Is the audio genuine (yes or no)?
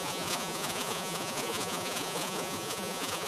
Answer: no